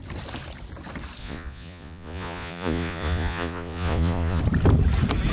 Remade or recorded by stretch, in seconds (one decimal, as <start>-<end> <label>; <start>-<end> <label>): 0.0-1.2 recorded; 1.2-4.4 remade; 4.4-5.3 recorded